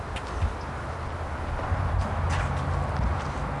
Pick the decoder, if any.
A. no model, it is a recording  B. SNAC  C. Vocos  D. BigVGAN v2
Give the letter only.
A